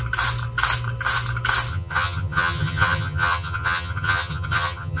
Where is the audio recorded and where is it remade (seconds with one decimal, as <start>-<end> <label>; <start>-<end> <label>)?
0.0-1.7 recorded; 1.7-5.0 remade